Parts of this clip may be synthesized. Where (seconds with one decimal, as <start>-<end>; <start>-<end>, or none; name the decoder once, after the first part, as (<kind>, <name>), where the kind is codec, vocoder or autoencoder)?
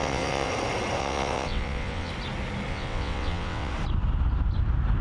0.0-0.5 (vocoder, WaveNeXt); 1.0-2.1; 2.7-3.7